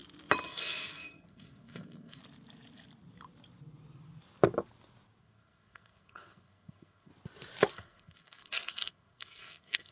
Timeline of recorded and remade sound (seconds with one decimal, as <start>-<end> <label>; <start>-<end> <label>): 0.0-0.5 recorded; 0.5-2.2 remade; 2.2-5.2 recorded; 5.2-7.1 remade; 7.1-7.7 recorded; 7.7-9.9 remade

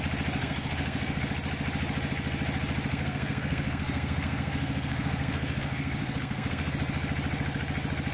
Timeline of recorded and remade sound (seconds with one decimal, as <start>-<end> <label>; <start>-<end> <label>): 0.0-0.4 recorded; 0.4-1.2 remade; 1.2-2.9 recorded; 2.9-6.7 remade; 6.7-8.1 recorded

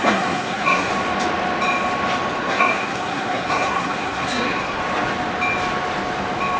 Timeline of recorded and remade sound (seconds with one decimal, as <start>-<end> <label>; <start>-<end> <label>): 0.0-0.9 remade; 0.9-2.4 recorded; 2.4-4.8 remade; 4.8-6.6 recorded

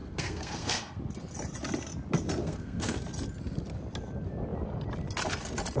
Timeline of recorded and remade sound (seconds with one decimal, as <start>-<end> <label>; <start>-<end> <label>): 0.0-1.0 remade; 1.0-2.4 recorded; 2.4-3.0 remade; 3.0-5.8 recorded

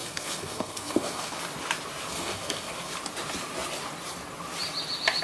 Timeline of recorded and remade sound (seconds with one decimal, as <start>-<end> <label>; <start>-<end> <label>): 0.0-1.4 remade; 1.4-2.1 recorded; 2.1-2.9 remade; 2.9-5.2 recorded

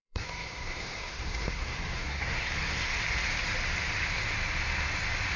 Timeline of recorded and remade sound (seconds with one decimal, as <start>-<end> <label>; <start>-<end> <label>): 0.0-3.0 remade; 3.0-5.4 recorded

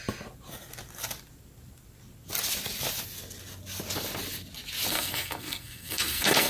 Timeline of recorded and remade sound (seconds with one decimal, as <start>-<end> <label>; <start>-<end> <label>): 0.0-4.9 recorded; 4.9-6.5 remade

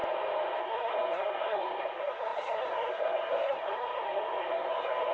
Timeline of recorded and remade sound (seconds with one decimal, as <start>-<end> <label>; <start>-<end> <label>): 0.0-0.6 recorded; 0.6-5.1 remade